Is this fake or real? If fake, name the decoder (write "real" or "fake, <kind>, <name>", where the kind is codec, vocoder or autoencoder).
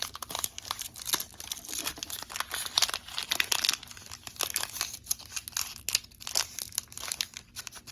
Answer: real